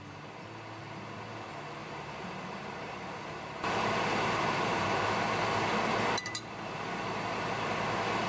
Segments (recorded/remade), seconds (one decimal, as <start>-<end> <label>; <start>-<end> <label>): 0.0-1.8 recorded; 1.8-5.3 remade; 5.3-5.9 recorded; 5.9-7.5 remade; 7.5-8.3 recorded